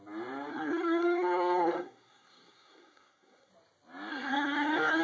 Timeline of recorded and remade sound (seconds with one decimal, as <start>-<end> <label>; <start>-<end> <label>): 0.0-0.5 recorded; 0.5-3.5 remade; 3.5-4.1 recorded; 4.1-5.0 remade